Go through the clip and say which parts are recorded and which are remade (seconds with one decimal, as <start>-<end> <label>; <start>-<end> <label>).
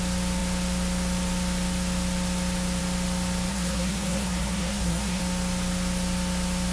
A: 0.0-3.5 recorded; 3.5-5.2 remade; 5.2-6.7 recorded